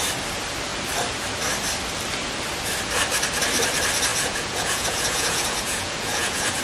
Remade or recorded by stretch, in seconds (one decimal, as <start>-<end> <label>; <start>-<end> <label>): 0.0-4.1 recorded; 4.1-6.6 remade

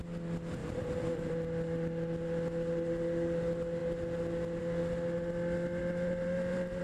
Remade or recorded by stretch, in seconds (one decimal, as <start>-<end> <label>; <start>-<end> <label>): 0.0-0.6 recorded; 0.6-1.3 remade; 1.3-5.8 recorded; 5.8-6.8 remade

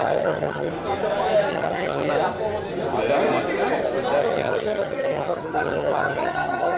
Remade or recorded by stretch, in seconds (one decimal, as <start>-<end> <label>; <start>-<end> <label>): 0.0-0.7 remade; 0.7-1.5 recorded; 1.5-2.1 remade; 2.1-4.2 recorded; 4.2-6.8 remade

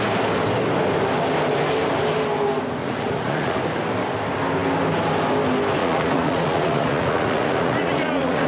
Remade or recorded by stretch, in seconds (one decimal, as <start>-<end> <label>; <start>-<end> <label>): 0.0-2.8 recorded; 2.8-3.6 remade; 3.6-5.8 recorded; 5.8-8.5 remade